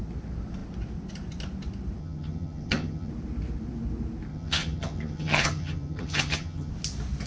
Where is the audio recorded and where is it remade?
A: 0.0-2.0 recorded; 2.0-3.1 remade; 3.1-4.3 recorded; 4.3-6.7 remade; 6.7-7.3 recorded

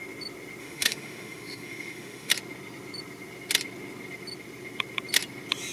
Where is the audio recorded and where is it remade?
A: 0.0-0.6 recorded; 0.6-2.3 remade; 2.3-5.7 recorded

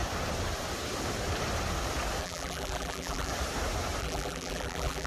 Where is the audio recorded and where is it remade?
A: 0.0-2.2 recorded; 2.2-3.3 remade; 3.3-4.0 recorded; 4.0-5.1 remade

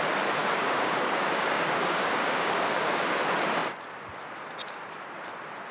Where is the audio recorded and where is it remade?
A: 0.0-0.4 recorded; 0.4-2.9 remade; 2.9-5.7 recorded

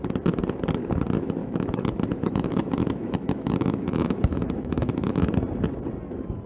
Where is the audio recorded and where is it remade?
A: 0.0-1.4 recorded; 1.4-5.3 remade; 5.3-6.5 recorded

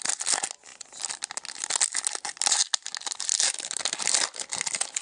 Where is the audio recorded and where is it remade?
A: 0.0-5.0 recorded